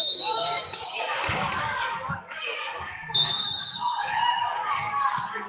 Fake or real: fake